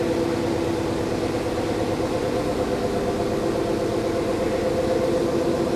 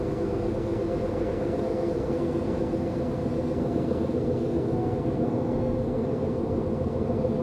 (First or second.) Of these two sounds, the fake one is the second